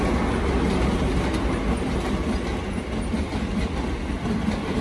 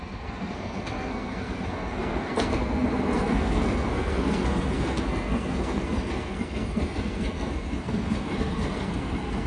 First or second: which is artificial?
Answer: second